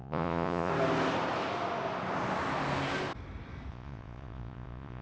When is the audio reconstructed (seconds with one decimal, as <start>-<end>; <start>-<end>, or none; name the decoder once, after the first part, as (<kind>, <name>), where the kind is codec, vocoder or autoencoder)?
0.0-0.7 (vocoder, Vocos); 3.7-5.0

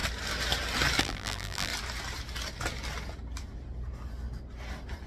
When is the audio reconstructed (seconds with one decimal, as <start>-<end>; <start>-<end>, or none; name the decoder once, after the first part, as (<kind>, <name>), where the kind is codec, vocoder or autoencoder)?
1.0-1.7 (vocoder, BigVGAN v2)